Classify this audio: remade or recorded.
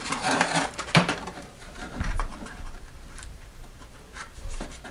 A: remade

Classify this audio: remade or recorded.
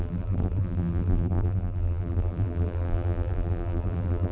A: remade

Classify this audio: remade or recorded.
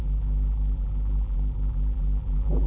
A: remade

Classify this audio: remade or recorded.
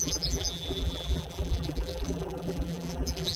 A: remade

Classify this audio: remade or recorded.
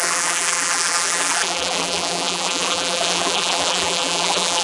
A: remade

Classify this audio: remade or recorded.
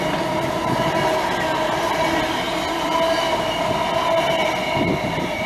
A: recorded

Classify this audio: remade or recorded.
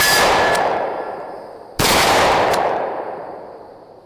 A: remade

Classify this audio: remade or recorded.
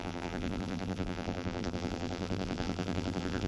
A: remade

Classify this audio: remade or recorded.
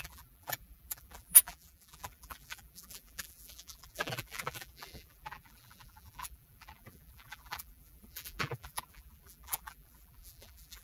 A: remade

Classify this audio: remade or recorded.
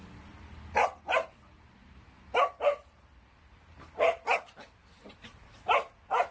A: recorded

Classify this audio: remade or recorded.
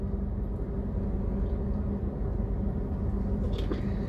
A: recorded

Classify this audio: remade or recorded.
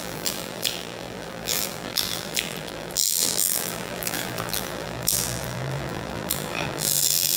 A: remade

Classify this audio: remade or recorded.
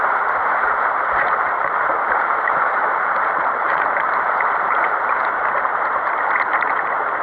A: remade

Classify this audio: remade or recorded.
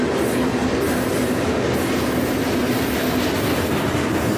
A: recorded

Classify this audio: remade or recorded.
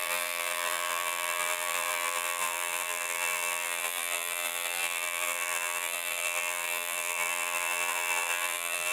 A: remade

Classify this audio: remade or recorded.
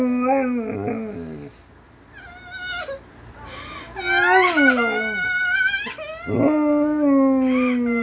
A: recorded